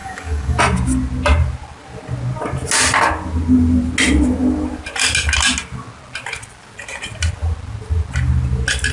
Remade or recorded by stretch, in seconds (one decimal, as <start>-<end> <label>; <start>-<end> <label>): 0.0-0.6 remade; 0.6-8.9 recorded